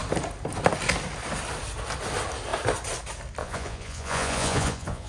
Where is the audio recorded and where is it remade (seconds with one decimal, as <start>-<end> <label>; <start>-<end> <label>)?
0.0-3.4 recorded; 3.4-5.1 remade

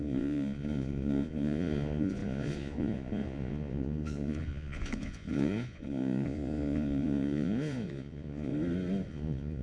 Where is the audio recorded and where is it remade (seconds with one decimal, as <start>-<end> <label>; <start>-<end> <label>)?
0.0-8.5 remade; 8.5-9.1 recorded; 9.1-9.6 remade

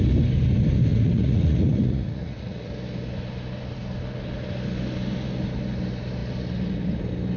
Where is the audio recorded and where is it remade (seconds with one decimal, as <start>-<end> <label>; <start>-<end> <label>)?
0.0-0.9 recorded; 0.9-2.7 remade; 2.7-7.4 recorded

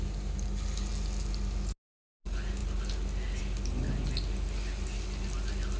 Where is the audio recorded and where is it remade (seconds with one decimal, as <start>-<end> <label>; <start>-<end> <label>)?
0.0-5.8 recorded

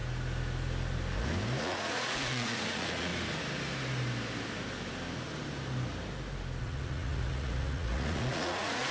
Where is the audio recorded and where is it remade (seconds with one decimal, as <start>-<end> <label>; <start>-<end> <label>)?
0.0-1.6 recorded; 1.6-3.1 remade; 3.1-6.6 recorded; 6.6-8.9 remade

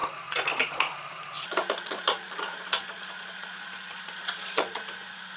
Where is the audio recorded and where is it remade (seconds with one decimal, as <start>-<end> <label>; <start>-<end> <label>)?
0.0-5.4 remade

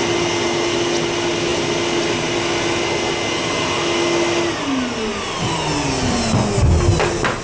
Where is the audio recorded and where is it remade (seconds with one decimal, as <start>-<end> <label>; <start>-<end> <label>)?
0.0-7.4 recorded